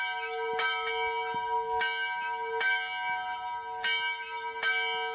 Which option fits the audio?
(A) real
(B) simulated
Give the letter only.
A